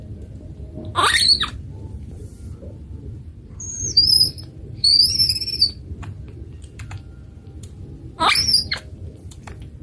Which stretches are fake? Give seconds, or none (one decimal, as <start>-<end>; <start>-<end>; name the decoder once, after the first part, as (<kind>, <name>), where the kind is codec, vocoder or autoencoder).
0.0-3.3 (vocoder, BigVGAN v2); 3.8-9.8